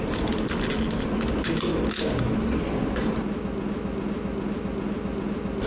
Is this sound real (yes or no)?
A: yes